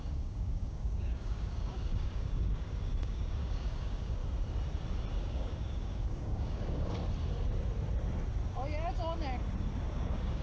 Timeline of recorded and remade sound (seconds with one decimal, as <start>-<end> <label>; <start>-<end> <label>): 0.0-4.2 remade; 4.2-5.2 recorded; 5.2-7.0 remade; 7.0-9.9 recorded; 9.9-10.4 remade